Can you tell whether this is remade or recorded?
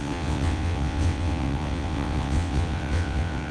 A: remade